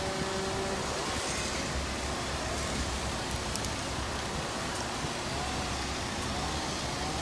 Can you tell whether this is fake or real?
real